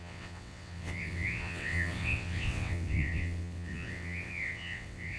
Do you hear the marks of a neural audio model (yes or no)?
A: yes